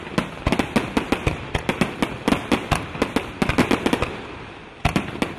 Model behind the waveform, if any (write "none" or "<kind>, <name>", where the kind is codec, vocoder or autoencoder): none